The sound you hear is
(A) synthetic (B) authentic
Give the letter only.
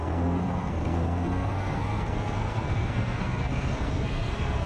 A